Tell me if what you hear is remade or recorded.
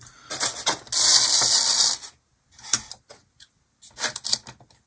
recorded